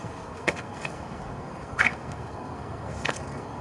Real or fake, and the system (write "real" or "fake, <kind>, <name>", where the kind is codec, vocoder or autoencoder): fake, codec, SNAC